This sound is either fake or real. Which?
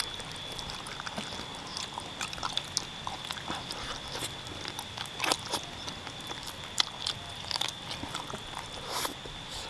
real